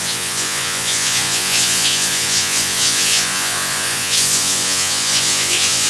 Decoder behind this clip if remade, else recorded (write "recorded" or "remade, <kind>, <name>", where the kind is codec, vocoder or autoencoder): remade, vocoder, Vocos